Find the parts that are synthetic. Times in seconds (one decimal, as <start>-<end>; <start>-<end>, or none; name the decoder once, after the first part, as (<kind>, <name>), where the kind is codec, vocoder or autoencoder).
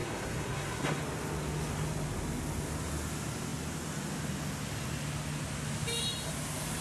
0.0-1.0 (codec, SNAC)